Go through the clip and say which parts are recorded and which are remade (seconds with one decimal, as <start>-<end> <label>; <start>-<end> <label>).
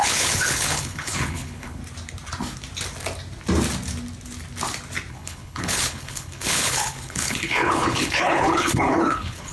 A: 0.0-1.8 remade; 1.8-5.1 recorded; 5.1-9.5 remade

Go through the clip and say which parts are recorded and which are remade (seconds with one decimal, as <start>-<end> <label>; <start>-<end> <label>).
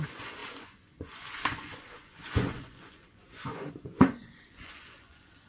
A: 0.0-5.5 remade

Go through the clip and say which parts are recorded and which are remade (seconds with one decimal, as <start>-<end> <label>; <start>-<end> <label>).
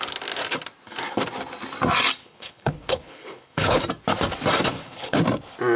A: 0.0-2.2 recorded; 2.2-3.8 remade; 3.8-4.7 recorded; 4.7-5.2 remade; 5.2-5.8 recorded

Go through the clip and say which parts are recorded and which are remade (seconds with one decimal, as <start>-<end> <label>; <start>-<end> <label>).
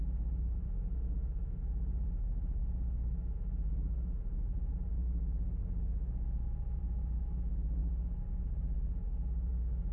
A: 0.0-9.9 recorded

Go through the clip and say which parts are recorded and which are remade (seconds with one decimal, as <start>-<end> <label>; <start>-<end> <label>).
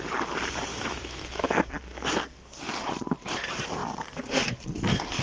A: 0.0-0.7 recorded; 0.7-1.8 remade; 1.8-5.2 recorded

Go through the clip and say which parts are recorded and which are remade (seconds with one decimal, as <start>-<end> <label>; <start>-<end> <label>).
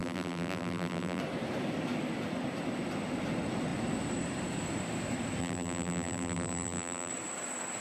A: 0.0-1.2 remade; 1.2-5.4 recorded; 5.4-7.1 remade; 7.1-7.8 recorded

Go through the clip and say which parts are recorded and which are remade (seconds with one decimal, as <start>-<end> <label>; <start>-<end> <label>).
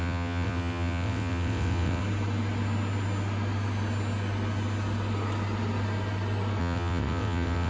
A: 0.0-2.0 remade; 2.0-6.6 recorded; 6.6-7.7 remade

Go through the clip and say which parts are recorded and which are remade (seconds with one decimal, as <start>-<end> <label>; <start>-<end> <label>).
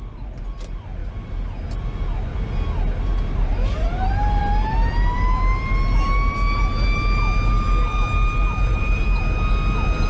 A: 0.0-3.3 recorded; 3.3-4.4 remade; 4.4-8.7 recorded; 8.7-9.2 remade; 9.2-10.1 recorded